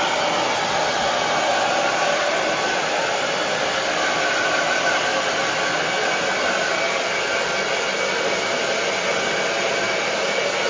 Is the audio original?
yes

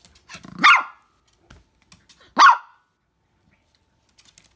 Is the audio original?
yes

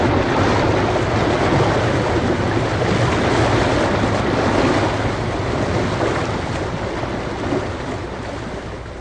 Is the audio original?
yes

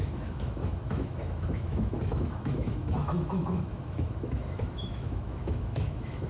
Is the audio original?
no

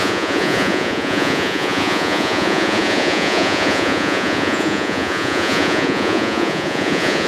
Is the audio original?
no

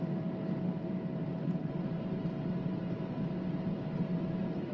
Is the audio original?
yes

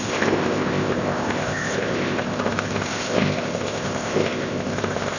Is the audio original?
no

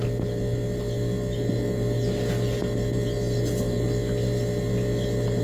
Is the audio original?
yes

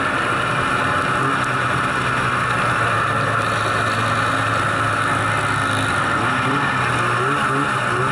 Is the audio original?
yes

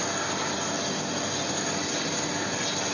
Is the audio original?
yes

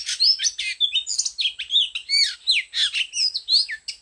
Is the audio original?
yes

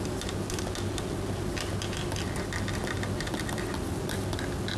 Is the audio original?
yes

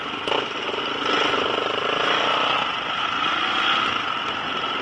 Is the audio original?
yes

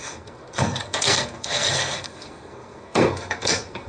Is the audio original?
no